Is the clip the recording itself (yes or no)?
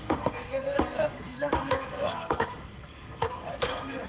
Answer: no